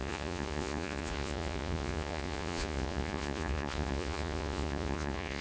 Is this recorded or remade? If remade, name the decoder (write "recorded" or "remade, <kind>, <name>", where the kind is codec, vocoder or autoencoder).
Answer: remade, vocoder, Vocos